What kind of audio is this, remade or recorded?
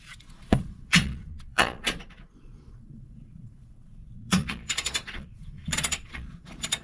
remade